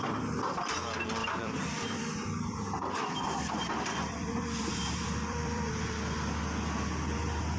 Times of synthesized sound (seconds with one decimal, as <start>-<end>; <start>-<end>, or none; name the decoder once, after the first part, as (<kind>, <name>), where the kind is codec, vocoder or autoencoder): 1.2-5.8 (vocoder, BigVGAN v2)